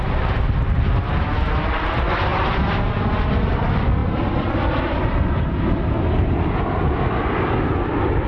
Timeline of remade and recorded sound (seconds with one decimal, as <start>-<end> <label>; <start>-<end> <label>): 0.0-8.3 recorded